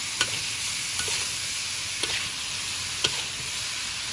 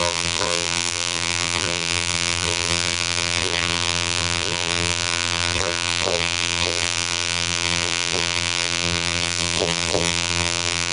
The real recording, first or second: first